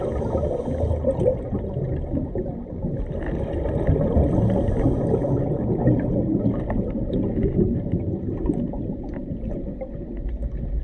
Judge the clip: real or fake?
real